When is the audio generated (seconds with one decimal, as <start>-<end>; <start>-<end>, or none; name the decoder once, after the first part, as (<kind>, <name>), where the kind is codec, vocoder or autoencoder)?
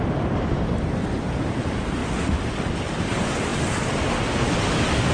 none